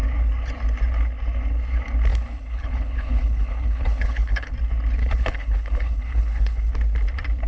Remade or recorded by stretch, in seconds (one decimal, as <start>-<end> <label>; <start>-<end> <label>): 0.0-2.1 recorded; 2.1-4.5 remade; 4.5-5.0 recorded; 5.0-6.7 remade; 6.7-7.5 recorded